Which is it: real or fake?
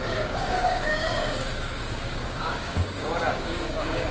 fake